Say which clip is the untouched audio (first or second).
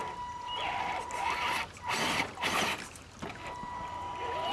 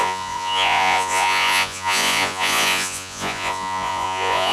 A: first